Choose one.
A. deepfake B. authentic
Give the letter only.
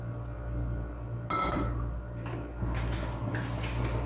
B